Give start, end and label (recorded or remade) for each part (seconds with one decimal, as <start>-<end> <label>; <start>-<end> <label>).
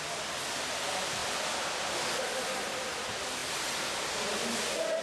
0.0-1.2 remade; 1.2-1.9 recorded; 1.9-5.0 remade